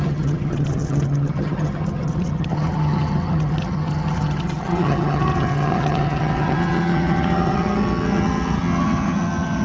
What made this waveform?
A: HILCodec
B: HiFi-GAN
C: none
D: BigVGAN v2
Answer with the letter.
B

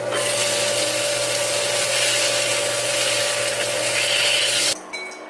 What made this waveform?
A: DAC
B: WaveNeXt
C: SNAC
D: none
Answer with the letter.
D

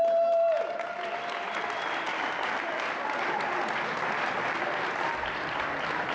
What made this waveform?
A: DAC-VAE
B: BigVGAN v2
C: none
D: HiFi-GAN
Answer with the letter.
C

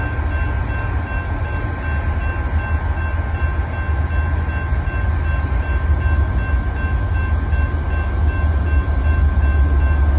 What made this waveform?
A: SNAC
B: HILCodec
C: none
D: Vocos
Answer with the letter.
C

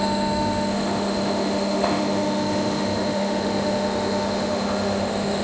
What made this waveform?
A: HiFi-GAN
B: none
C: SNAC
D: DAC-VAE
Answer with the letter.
D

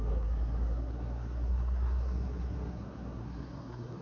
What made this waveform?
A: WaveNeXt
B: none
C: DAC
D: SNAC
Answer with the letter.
D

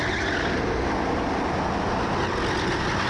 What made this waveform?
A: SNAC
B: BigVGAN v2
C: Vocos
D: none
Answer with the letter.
D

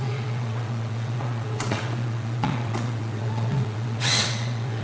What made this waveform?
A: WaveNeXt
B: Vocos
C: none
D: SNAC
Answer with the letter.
A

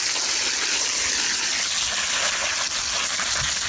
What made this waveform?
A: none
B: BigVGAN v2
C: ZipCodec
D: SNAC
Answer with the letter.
A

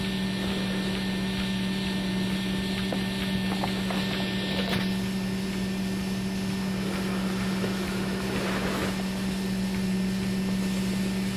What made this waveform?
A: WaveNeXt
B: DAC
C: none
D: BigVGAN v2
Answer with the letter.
C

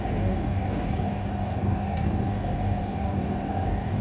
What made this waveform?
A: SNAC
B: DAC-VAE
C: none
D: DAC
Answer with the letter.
D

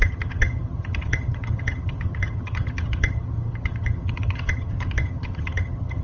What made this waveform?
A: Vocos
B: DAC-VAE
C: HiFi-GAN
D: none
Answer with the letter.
C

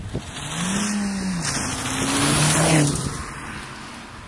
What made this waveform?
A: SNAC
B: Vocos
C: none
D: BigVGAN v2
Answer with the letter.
C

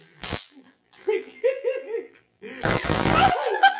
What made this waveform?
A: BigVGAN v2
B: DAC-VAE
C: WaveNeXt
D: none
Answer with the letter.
A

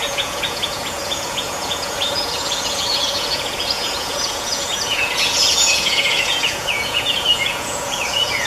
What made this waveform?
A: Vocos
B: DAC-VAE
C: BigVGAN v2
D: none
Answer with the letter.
A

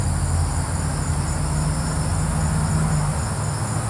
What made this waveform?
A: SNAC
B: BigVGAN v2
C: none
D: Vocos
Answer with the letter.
C